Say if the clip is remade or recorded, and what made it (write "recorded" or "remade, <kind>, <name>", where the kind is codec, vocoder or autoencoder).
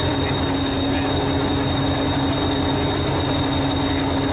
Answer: recorded